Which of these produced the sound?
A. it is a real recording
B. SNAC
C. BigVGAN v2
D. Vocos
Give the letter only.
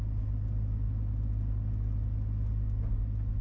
A